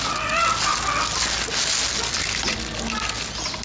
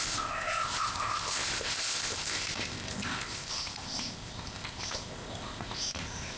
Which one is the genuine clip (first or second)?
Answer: first